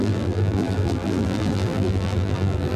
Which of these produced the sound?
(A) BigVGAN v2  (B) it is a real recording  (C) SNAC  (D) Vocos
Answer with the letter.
A